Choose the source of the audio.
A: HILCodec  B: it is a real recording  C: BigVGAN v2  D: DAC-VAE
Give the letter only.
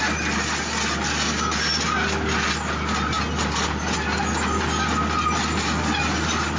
B